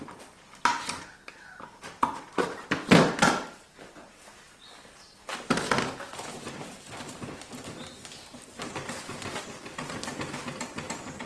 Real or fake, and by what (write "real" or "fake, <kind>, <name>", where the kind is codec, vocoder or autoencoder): real